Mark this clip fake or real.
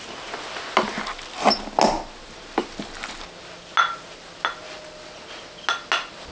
real